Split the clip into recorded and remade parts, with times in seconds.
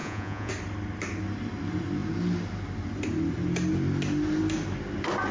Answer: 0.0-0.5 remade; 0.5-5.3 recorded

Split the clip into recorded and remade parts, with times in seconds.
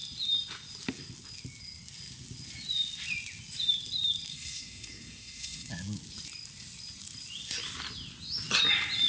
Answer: 0.0-4.3 recorded; 4.3-5.7 remade; 5.7-9.1 recorded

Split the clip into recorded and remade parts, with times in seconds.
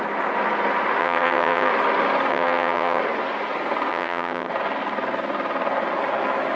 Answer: 0.0-1.0 recorded; 1.0-1.7 remade; 1.7-2.3 recorded; 2.3-3.0 remade; 3.0-3.9 recorded; 3.9-4.5 remade; 4.5-6.6 recorded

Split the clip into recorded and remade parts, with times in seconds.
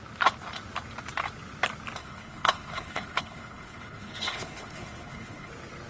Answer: 0.0-2.0 recorded; 2.0-5.5 remade; 5.5-5.9 recorded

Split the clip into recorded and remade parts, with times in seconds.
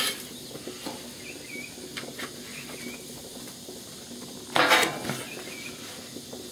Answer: 0.0-6.5 recorded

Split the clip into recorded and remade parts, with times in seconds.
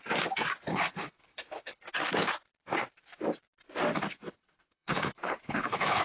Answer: 0.0-0.7 recorded; 0.7-1.8 remade; 1.8-4.1 recorded; 4.1-6.0 remade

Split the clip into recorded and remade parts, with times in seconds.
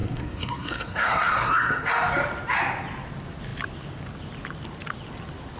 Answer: 0.0-1.9 remade; 1.9-5.6 recorded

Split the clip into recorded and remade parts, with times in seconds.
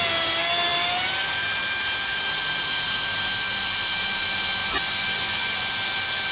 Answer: 0.0-4.6 recorded; 4.6-5.7 remade; 5.7-6.3 recorded